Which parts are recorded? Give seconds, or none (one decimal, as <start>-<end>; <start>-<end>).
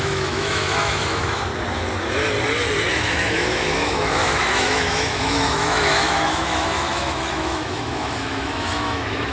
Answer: 1.5-2.9